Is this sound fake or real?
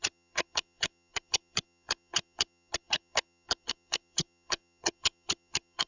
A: fake